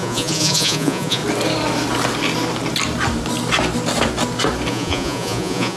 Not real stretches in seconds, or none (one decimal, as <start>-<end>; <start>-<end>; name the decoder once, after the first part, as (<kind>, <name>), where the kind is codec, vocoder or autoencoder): 0.0-1.2 (vocoder, Vocos); 4.7-5.8